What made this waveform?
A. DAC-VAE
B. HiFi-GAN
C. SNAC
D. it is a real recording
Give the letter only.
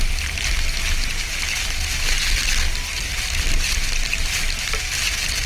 D